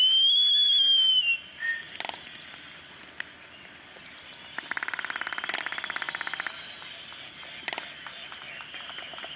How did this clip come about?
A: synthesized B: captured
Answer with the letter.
B